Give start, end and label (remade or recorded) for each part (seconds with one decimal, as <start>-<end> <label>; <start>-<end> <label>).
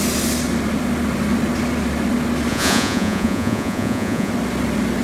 0.0-2.5 recorded; 2.5-4.3 remade; 4.3-5.0 recorded